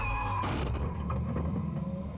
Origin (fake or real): real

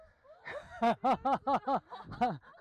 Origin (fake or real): real